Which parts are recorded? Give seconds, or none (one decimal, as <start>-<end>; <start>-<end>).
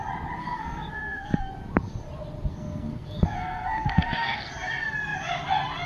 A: 0.0-0.4; 1.5-2.5; 4.5-5.9